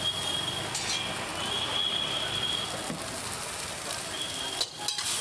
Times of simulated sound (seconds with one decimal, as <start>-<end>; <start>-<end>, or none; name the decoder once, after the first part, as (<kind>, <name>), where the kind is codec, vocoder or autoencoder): none